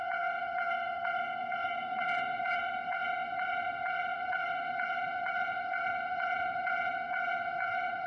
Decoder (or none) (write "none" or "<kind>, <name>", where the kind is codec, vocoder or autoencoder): vocoder, WaveNeXt